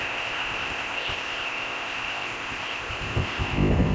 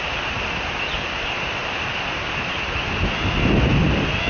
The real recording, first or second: second